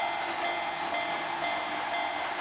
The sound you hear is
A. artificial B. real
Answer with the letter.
B